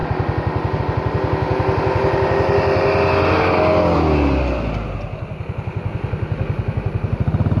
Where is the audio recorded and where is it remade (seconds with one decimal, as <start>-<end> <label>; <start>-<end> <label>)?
0.0-7.6 recorded